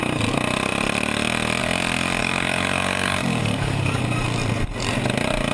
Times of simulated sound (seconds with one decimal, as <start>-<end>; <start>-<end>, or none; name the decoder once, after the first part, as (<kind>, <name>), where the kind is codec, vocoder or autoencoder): 2.2-4.0 (codec, DAC)